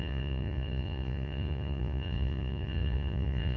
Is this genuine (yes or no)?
no